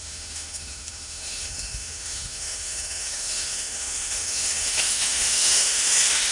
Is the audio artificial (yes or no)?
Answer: yes